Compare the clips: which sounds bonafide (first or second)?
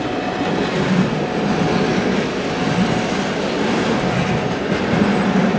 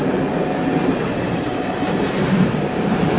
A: first